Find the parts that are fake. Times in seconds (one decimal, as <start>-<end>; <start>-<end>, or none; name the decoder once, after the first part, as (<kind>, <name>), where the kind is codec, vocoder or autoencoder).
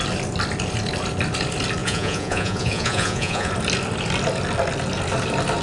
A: 1.8-3.5 (vocoder, Vocos)